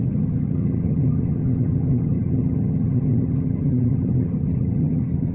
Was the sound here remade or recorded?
remade